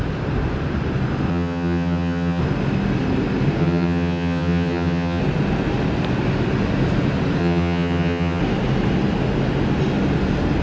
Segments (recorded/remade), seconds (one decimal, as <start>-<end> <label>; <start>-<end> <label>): 0.0-1.3 recorded; 1.3-2.4 remade; 2.4-3.6 recorded; 3.6-5.2 remade; 5.2-7.4 recorded; 7.4-8.4 remade; 8.4-10.6 recorded